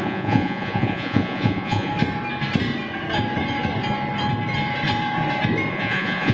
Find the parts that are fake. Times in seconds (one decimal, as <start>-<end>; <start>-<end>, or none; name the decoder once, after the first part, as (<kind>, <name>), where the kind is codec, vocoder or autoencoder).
0.0-1.9 (vocoder, Vocos); 5.7-6.3